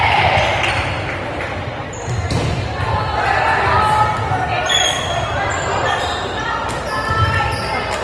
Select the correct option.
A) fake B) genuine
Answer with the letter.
B